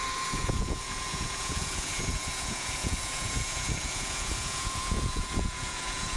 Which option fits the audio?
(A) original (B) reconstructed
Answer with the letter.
B